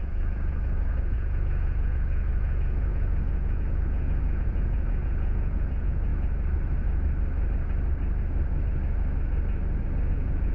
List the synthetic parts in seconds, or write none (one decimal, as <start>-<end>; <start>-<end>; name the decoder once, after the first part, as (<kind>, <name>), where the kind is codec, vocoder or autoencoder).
0.0-6.1 (vocoder, Vocos); 10.1-10.5